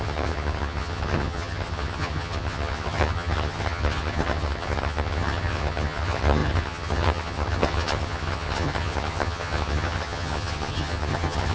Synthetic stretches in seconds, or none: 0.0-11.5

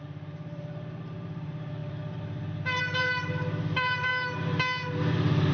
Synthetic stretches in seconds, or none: 0.0-4.1